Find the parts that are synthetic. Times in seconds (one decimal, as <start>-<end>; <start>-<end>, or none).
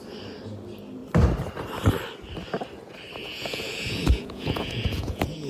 3.2-5.5